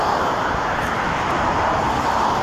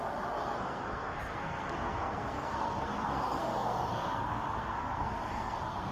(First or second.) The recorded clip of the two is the first